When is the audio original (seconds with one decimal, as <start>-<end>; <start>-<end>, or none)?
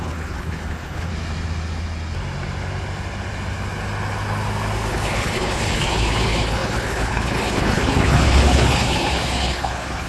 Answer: 1.1-4.9